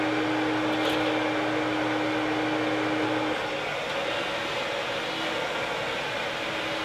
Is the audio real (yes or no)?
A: yes